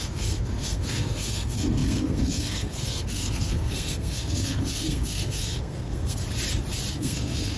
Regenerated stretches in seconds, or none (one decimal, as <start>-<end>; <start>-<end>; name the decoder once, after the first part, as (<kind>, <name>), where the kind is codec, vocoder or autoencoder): 0.0-6.2 (codec, SNAC); 6.9-7.6